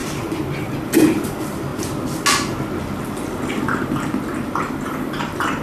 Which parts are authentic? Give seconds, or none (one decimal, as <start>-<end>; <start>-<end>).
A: 0.0-5.6